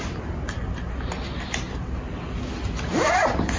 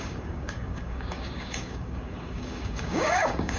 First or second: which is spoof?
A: second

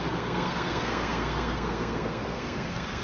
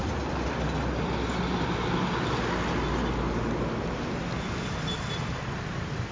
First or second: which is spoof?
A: first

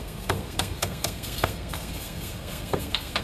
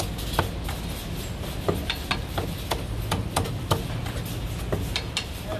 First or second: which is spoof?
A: first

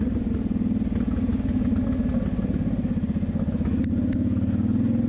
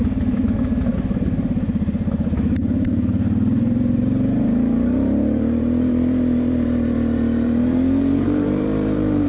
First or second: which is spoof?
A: second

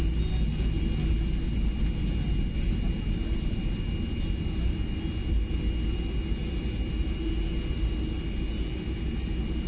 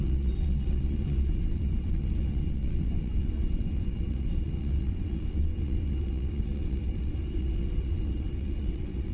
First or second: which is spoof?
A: second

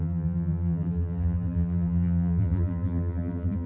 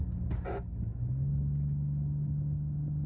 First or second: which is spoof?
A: first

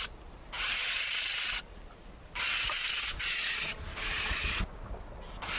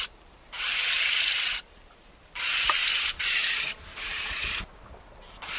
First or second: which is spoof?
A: second